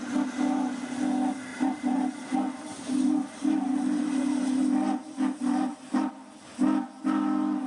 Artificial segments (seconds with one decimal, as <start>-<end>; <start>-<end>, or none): 1.5-6.1